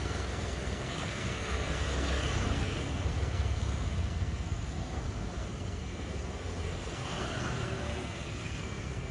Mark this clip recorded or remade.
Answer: remade